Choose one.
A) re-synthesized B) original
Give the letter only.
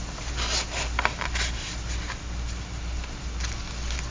B